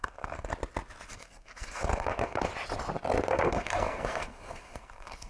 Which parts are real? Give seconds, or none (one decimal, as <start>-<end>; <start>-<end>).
0.5-1.1; 2.5-3.3

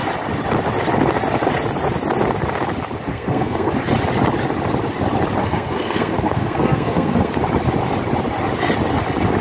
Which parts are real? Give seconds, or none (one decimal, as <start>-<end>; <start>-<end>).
0.0-3.1; 3.7-5.4; 7.3-9.4

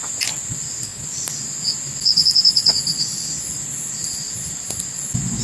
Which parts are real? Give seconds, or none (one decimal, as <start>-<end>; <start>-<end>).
0.0-5.4

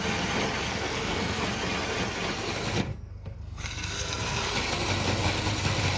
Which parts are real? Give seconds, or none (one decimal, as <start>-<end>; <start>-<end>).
0.0-0.7; 1.4-2.9; 4.5-6.0

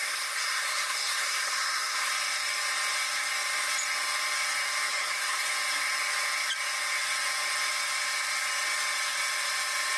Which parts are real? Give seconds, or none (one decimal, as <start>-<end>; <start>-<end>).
2.1-4.9; 5.5-10.0

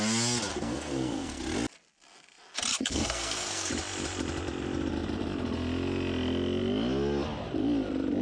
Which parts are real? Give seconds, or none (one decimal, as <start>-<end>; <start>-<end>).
0.0-0.5; 1.4-2.7; 3.7-8.2